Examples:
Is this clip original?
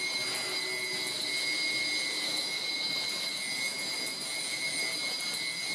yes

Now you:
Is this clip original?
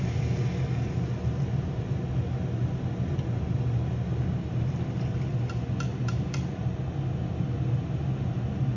yes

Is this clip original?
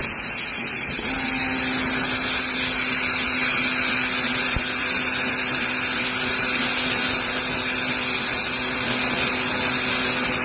yes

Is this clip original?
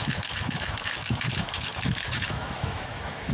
no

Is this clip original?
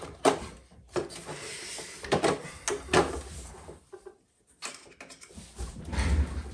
yes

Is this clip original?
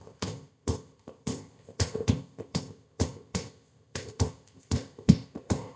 no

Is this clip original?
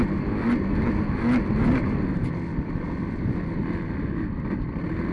yes